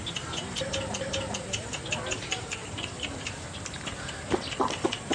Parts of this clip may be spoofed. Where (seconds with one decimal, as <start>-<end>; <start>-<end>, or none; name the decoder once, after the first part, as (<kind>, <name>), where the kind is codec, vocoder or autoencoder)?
0.0-0.4 (vocoder, BigVGAN v2); 1.9-5.1